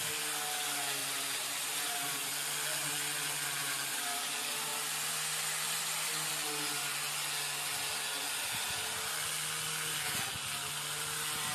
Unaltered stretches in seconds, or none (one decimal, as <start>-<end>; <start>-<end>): 0.0-1.0; 2.3-3.6; 4.2-11.5